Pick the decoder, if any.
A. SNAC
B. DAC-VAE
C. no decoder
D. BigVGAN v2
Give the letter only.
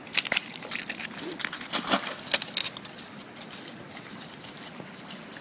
C